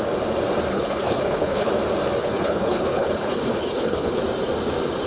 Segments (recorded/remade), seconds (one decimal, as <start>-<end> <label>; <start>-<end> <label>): 0.0-0.7 recorded; 0.7-1.7 remade; 1.7-2.2 recorded; 2.2-4.2 remade; 4.2-5.1 recorded